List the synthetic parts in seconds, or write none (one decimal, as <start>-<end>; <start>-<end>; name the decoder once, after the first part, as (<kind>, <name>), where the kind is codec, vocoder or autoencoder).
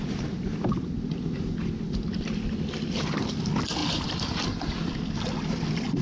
none